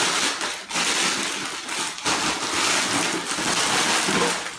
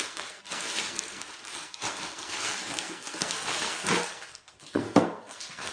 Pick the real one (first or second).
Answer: first